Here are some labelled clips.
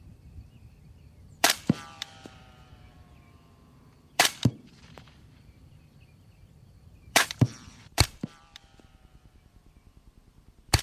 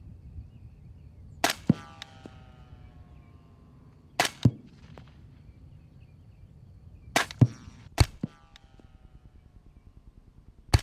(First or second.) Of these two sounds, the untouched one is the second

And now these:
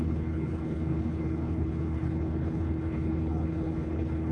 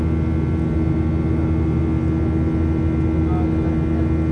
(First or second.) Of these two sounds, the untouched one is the second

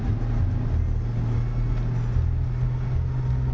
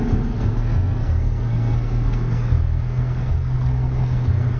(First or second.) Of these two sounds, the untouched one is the first